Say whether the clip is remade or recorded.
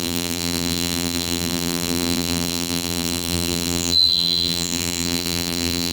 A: remade